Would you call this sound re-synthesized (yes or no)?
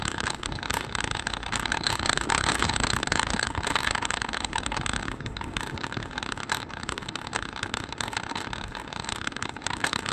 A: yes